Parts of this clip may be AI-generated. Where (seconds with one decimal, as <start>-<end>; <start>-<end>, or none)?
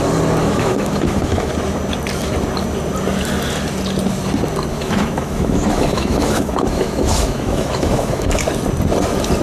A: 0.4-1.5; 4.7-8.4